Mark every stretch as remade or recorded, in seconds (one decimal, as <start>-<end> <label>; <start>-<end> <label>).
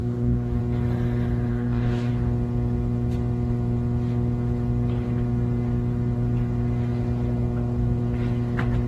0.0-0.6 remade; 0.6-1.5 recorded; 1.5-2.1 remade; 2.1-8.9 recorded